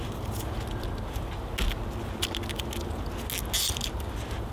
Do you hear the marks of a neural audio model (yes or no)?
no